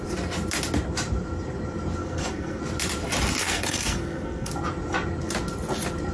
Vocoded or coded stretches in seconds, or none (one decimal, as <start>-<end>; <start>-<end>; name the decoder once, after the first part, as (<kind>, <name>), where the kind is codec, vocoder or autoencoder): 2.0-2.6 (codec, SNAC); 3.4-4.5

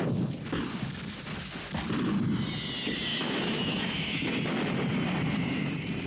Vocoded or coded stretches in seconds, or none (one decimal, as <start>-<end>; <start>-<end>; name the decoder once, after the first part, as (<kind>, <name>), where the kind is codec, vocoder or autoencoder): 3.1-4.3 (autoencoder, DAC-VAE)

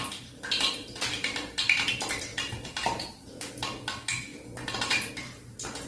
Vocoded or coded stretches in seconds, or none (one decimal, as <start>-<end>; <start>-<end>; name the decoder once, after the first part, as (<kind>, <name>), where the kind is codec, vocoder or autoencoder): 2.3-3.5 (vocoder, BigVGAN v2)

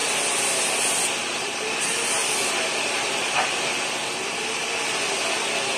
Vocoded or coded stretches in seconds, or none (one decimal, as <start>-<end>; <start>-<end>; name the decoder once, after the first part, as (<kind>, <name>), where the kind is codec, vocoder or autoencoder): 1.2-1.7 (vocoder, BigVGAN v2)

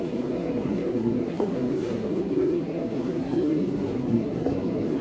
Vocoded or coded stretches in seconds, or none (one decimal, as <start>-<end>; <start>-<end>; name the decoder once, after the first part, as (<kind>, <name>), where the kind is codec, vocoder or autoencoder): 0.0-5.0 (codec, SNAC)

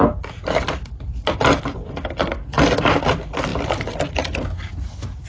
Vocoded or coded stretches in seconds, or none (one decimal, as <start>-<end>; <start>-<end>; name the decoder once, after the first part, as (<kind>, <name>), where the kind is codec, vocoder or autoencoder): none

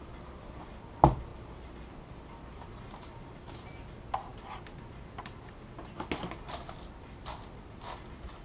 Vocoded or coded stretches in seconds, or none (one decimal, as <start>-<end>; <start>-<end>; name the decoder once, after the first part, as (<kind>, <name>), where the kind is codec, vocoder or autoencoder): none

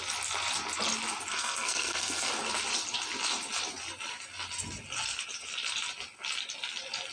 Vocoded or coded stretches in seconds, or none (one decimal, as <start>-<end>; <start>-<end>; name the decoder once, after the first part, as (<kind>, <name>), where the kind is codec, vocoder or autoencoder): 1.3-2.3 (codec, SNAC)